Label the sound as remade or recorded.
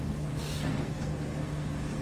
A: remade